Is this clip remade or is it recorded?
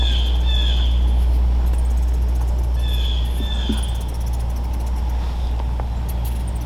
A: recorded